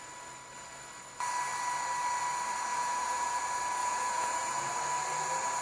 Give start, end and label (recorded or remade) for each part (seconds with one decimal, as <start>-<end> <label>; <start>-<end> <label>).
0.0-2.7 recorded; 2.7-3.4 remade; 3.4-3.8 recorded; 3.8-4.7 remade; 4.7-5.6 recorded